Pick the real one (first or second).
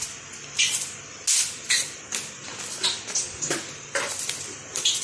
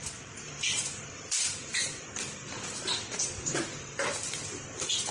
first